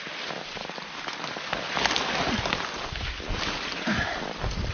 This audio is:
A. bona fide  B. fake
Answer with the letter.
A